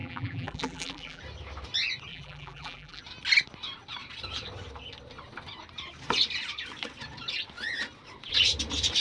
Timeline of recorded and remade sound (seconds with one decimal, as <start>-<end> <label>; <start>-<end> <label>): 0.0-1.2 remade; 1.2-2.1 recorded; 2.1-3.0 remade; 3.0-9.0 recorded